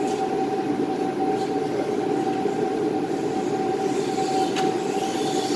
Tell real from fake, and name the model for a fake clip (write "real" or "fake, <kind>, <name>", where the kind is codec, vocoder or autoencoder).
real